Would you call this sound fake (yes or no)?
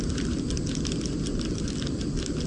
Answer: no